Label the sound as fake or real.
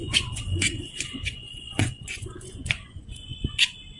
fake